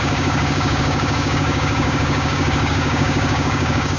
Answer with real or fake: fake